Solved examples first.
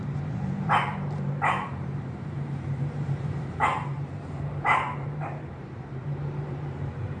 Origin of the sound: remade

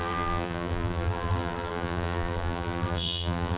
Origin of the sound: remade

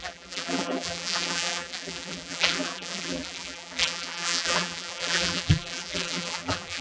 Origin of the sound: remade